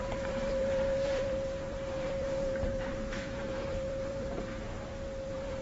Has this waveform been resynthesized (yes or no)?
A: yes